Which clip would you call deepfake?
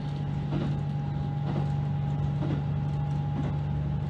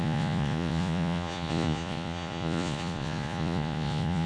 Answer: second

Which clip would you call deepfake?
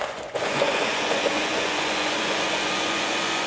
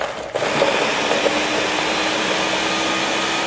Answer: first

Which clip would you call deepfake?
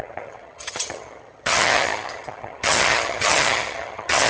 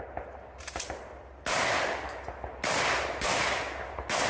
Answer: first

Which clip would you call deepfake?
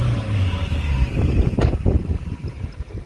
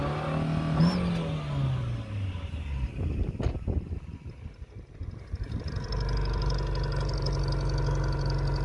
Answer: first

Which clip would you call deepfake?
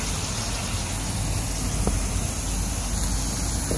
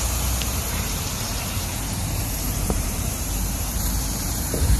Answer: second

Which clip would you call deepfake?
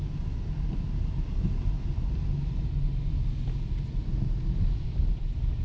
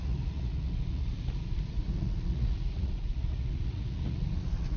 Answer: second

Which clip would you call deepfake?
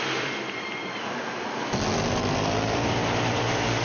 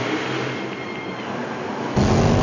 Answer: first